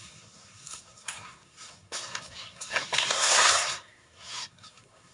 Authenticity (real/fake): fake